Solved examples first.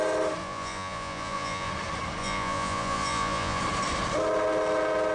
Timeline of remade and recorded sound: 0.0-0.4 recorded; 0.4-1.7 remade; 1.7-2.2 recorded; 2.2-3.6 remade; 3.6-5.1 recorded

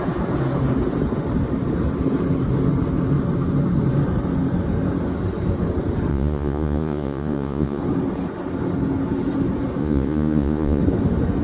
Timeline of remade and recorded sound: 0.0-6.1 recorded; 6.1-7.8 remade; 7.8-9.8 recorded; 9.8-10.8 remade; 10.8-11.4 recorded

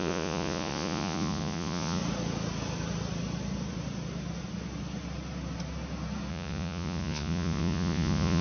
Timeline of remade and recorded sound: 0.0-2.0 remade; 2.0-6.3 recorded; 6.3-8.4 remade

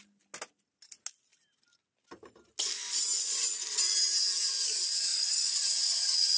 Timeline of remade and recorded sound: 0.0-5.1 recorded; 5.1-6.4 remade

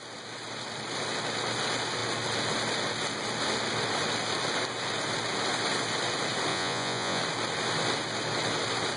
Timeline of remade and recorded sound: 0.0-6.5 recorded; 6.5-7.2 remade; 7.2-9.0 recorded